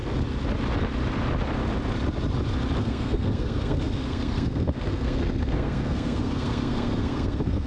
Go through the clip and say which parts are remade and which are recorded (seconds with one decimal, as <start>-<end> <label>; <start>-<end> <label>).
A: 0.0-2.8 recorded; 2.8-7.7 remade